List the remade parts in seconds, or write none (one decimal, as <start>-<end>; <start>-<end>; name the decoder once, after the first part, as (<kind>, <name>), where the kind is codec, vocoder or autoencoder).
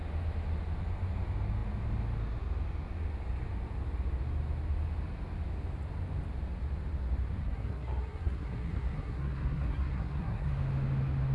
7.4-10.5 (codec, SNAC)